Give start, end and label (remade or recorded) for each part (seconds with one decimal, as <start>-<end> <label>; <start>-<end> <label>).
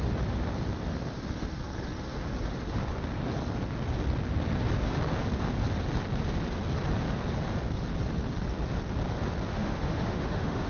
0.0-9.5 recorded; 9.5-10.7 remade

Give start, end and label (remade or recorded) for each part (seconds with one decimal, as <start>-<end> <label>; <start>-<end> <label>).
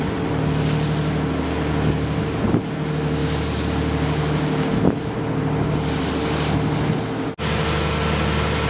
0.0-8.7 recorded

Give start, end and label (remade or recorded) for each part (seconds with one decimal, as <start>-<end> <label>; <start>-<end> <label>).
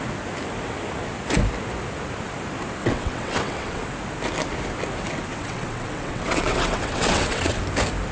0.0-2.8 recorded; 2.8-3.9 remade; 3.9-5.3 recorded; 5.3-7.6 remade; 7.6-8.1 recorded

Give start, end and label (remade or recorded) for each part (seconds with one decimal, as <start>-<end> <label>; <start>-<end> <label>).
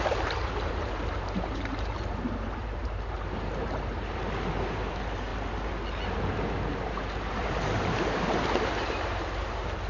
0.0-5.3 remade; 5.3-6.6 recorded; 6.6-9.9 remade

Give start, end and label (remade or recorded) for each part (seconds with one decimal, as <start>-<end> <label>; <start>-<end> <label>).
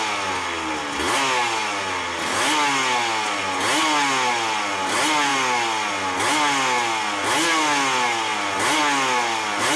0.0-9.8 recorded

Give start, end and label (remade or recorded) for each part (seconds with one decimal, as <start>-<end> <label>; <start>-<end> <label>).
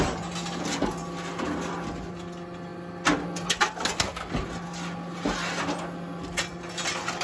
0.0-7.2 recorded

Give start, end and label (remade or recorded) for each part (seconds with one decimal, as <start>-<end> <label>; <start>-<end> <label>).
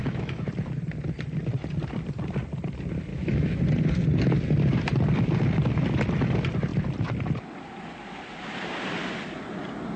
0.0-0.5 remade; 0.5-3.1 recorded; 3.1-3.6 remade; 3.6-10.0 recorded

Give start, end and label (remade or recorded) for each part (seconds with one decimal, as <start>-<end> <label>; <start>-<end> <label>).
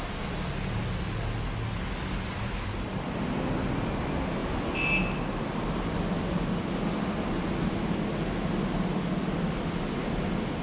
0.0-10.6 recorded